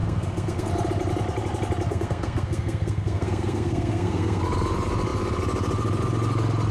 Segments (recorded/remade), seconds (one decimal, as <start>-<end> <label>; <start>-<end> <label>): 0.0-0.7 remade; 0.7-1.9 recorded; 1.9-4.4 remade; 4.4-6.7 recorded